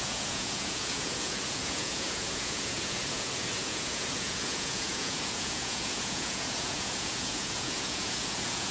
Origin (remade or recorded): remade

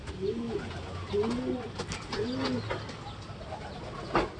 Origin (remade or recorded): recorded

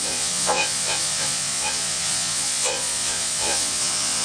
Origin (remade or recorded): remade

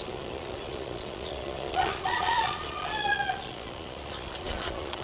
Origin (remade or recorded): remade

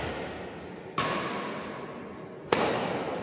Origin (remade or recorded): recorded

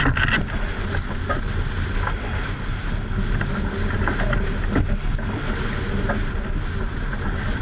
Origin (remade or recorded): recorded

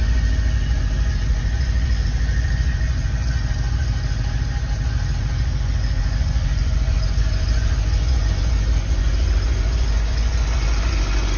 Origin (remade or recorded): remade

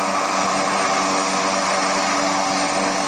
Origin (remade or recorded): recorded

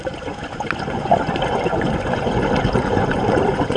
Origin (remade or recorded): remade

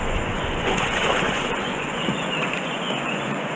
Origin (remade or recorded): remade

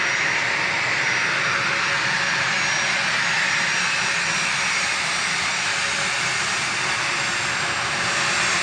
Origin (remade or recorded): recorded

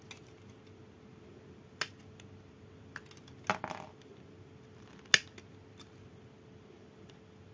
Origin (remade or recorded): recorded